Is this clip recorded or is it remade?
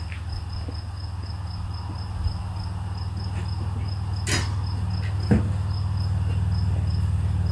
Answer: recorded